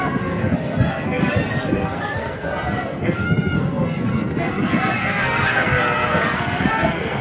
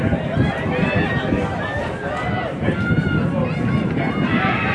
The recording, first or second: second